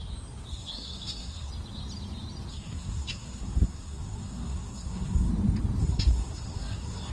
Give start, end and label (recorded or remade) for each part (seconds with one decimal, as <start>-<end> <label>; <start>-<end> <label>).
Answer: 0.0-0.5 recorded; 0.5-1.5 remade; 1.5-2.5 recorded; 2.5-5.3 remade; 5.3-5.8 recorded; 5.8-7.1 remade